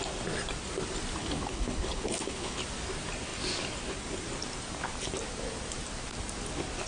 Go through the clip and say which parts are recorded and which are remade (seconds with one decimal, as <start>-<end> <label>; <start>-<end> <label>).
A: 0.0-1.2 recorded; 1.2-2.6 remade; 2.6-6.9 recorded